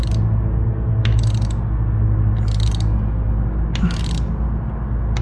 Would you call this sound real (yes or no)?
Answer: yes